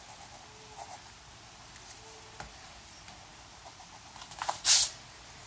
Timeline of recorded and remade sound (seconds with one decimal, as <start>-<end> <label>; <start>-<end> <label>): 0.0-5.5 recorded